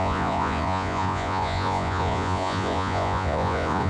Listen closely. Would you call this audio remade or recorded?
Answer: remade